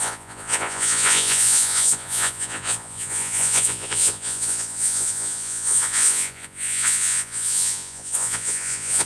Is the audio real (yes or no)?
no